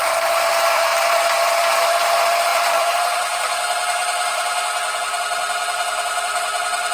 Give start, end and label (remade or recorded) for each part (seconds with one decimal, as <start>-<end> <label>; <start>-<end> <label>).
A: 0.0-0.9 recorded; 0.9-1.5 remade; 1.5-2.5 recorded; 2.5-3.0 remade; 3.0-6.9 recorded

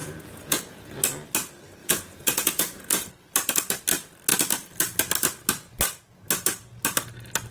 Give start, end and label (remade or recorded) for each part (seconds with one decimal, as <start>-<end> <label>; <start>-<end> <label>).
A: 0.0-1.0 remade; 1.0-1.8 recorded; 1.8-3.1 remade; 3.1-7.5 recorded

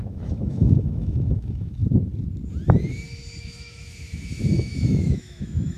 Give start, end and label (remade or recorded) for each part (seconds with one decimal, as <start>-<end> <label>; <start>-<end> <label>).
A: 0.0-1.8 remade; 1.8-3.4 recorded; 3.4-5.8 remade

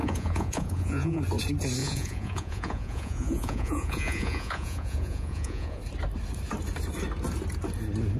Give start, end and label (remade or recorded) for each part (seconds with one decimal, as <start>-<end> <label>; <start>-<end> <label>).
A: 0.0-1.2 remade; 1.2-1.8 recorded; 1.8-5.8 remade; 5.8-8.2 recorded

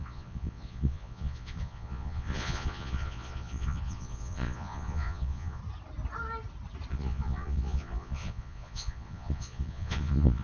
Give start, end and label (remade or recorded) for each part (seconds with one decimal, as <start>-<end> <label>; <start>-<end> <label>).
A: 0.0-5.6 remade; 5.6-6.9 recorded; 6.9-10.4 remade

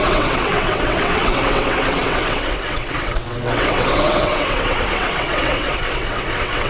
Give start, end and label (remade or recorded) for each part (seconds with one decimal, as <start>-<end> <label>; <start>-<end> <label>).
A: 0.0-6.7 remade

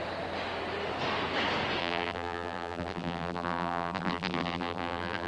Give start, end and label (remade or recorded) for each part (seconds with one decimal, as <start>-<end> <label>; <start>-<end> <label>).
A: 0.0-1.8 recorded; 1.8-5.3 remade